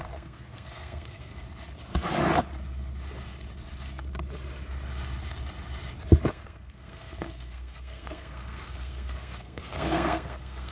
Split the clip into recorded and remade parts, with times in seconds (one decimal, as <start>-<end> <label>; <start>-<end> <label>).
0.0-1.3 remade; 1.3-6.3 recorded; 6.3-10.7 remade